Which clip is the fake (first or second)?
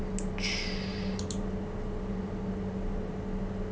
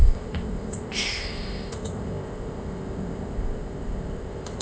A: second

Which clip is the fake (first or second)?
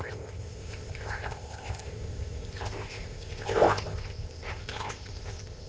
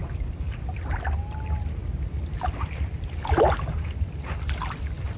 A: first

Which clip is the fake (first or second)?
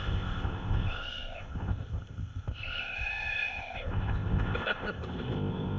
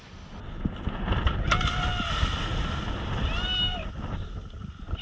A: first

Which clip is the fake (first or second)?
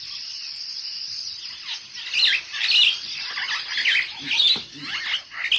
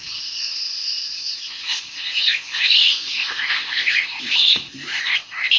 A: second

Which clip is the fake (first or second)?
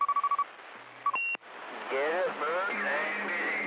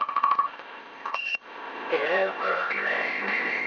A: second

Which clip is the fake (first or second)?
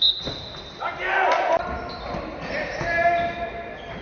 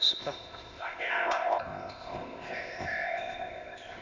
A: second